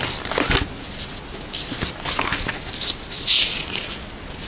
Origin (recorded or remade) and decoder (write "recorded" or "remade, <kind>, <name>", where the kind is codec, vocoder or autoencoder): recorded